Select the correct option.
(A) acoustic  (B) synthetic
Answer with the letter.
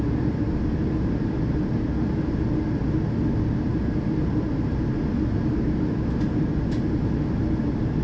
A